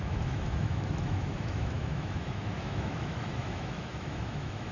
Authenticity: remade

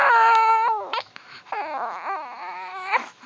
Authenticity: remade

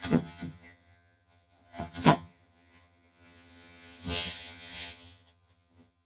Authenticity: remade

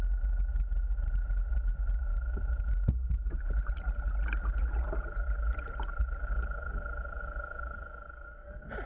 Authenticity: recorded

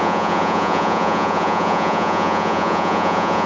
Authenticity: remade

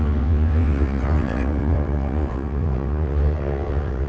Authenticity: remade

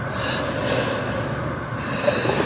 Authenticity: recorded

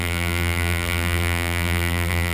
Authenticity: remade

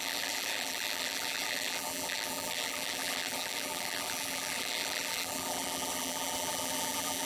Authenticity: remade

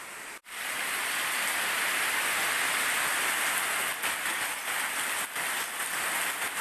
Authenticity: recorded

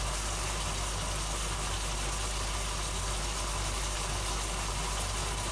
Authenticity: recorded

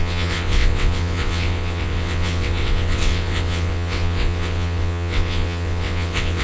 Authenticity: remade